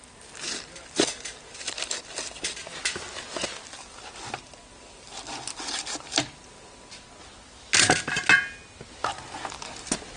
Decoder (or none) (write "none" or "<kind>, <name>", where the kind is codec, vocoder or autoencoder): none